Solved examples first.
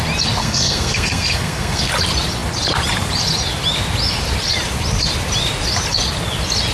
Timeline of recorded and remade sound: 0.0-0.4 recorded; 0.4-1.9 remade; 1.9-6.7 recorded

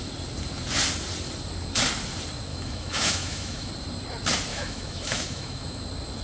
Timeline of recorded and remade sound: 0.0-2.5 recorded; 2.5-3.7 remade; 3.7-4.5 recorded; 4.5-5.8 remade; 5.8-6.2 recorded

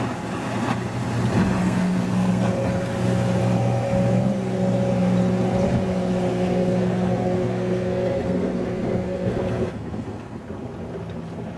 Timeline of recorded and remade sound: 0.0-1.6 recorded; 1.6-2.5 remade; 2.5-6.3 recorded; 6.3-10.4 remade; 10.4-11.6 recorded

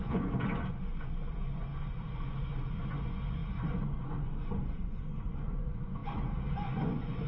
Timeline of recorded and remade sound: 0.0-7.3 remade

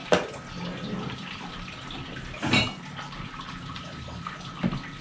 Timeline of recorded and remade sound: 0.0-5.0 recorded